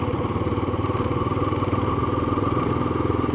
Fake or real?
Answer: real